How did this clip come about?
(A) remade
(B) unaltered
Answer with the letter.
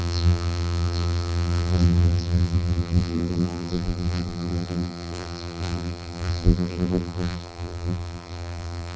A